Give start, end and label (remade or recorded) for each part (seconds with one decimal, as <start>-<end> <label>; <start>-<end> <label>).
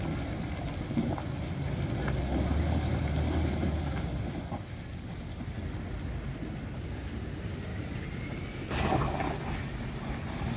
0.0-2.9 recorded; 2.9-4.2 remade; 4.2-7.7 recorded; 7.7-8.2 remade; 8.2-10.6 recorded